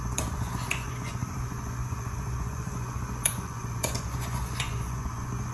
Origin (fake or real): fake